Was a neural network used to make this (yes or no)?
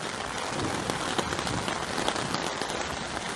no